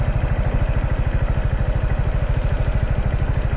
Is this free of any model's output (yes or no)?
yes